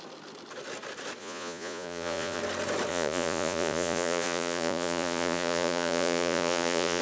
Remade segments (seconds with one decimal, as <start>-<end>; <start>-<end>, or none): 1.2-2.4; 2.9-7.0